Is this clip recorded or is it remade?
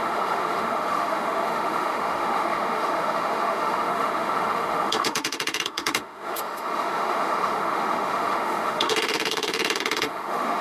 remade